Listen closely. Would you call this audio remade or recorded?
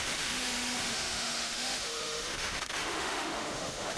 remade